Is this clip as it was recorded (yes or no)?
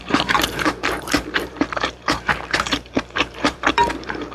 no